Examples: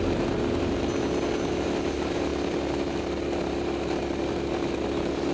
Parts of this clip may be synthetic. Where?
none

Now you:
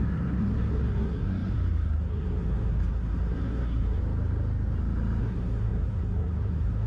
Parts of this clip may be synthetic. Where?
0.0-4.0 (codec, SNAC); 5.2-6.9

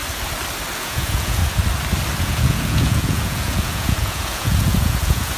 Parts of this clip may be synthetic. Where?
0.8-1.4 (vocoder, Vocos); 2.2-5.4

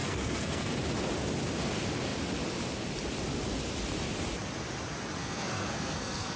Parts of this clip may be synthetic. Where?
0.0-0.7 (codec, SNAC); 5.2-6.4

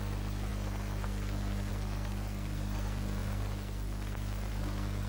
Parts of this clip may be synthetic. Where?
0.0-5.1 (codec, SNAC)

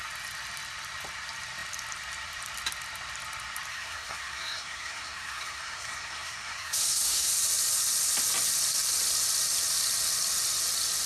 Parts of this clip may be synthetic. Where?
3.7-7.3 (codec, SNAC)

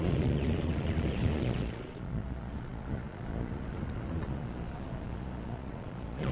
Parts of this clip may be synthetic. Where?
0.0-6.3 (vocoder, Vocos)